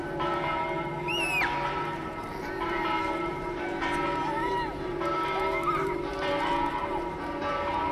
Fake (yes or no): yes